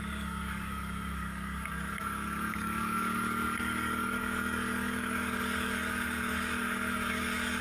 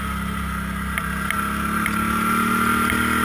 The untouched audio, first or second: second